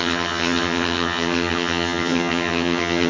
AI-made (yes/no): yes